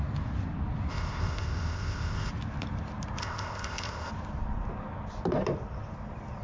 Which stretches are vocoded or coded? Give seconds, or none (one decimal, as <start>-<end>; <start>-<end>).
0.9-2.3; 3.2-4.1